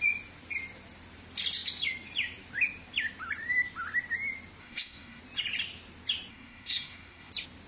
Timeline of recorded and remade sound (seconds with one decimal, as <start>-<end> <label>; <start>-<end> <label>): 0.0-4.6 recorded; 4.6-5.2 remade; 5.2-6.3 recorded; 6.3-7.3 remade; 7.3-7.7 recorded